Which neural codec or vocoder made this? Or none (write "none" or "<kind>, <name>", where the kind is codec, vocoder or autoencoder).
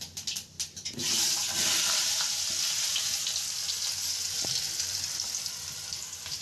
none